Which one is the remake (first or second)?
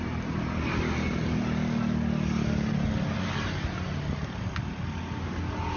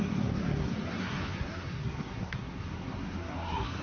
second